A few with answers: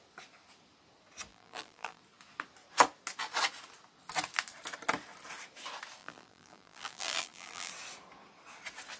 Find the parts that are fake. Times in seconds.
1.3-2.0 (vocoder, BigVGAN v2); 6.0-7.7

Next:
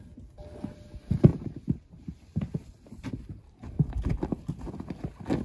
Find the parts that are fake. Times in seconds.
1.3-4.5 (vocoder, BigVGAN v2)

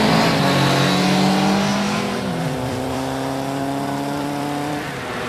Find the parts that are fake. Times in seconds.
1.7-5.3 (vocoder, BigVGAN v2)